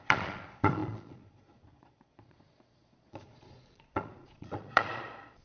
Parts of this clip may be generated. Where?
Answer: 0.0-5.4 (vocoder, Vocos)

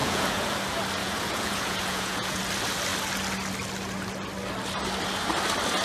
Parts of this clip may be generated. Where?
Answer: 0.0-0.5 (vocoder, Vocos); 1.0-2.4

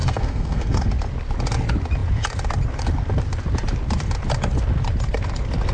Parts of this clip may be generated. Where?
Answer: 0.0-0.9 (codec, SNAC)